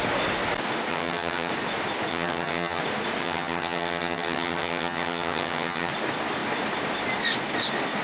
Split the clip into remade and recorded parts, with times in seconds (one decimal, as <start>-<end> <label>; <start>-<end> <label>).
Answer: 0.0-0.9 recorded; 0.9-1.5 remade; 1.5-2.1 recorded; 2.1-2.8 remade; 2.8-3.2 recorded; 3.2-5.9 remade; 5.9-8.0 recorded